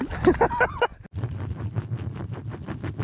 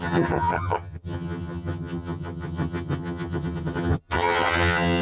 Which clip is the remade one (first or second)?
second